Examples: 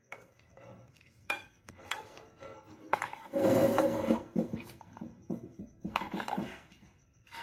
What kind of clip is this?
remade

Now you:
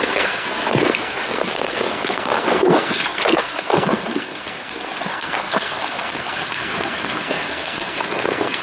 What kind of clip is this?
remade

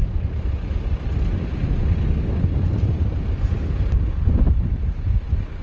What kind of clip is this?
recorded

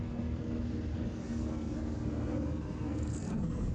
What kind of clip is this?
remade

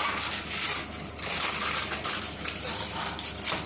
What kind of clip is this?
recorded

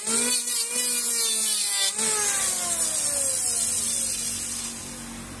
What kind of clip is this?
recorded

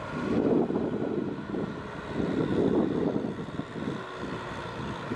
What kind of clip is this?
recorded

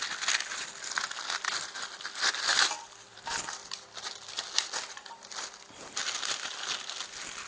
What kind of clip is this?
recorded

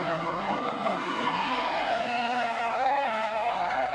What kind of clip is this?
remade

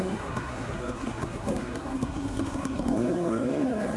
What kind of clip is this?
remade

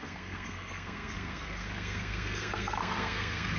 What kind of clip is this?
remade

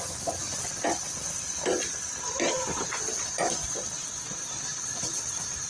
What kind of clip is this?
recorded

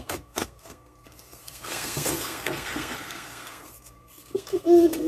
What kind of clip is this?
remade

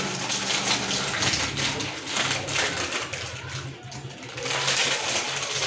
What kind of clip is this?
recorded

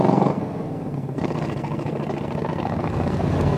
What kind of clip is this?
remade